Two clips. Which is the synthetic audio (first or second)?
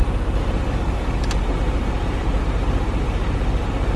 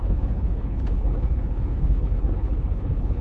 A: second